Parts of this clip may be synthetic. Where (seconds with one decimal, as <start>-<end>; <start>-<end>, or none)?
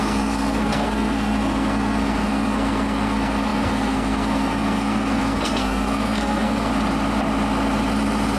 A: 0.0-6.7